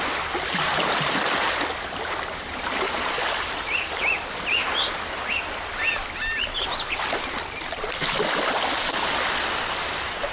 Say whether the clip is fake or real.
real